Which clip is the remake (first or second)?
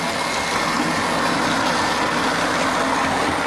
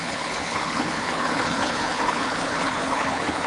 second